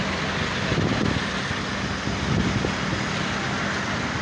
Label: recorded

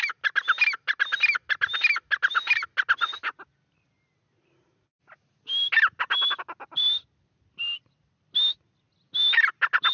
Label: recorded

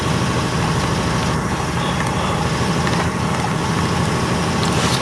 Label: recorded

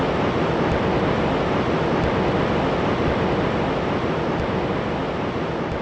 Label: recorded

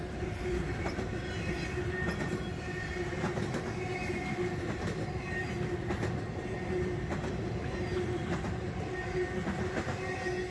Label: recorded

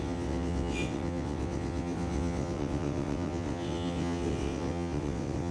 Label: remade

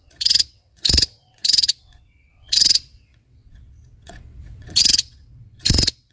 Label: remade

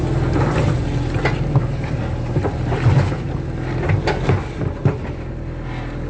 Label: recorded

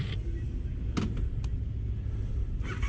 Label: recorded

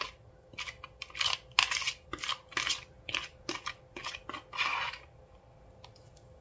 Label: recorded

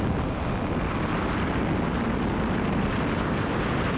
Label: recorded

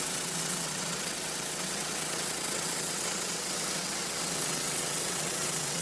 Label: remade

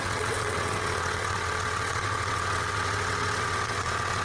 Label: remade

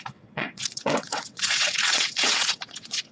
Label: remade